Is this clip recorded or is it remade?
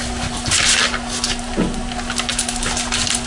recorded